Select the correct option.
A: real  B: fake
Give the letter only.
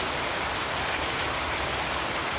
A